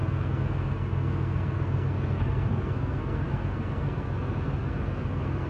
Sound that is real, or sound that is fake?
fake